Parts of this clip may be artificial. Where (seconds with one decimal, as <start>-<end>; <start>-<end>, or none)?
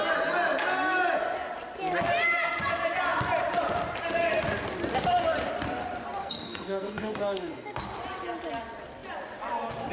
6.2-7.8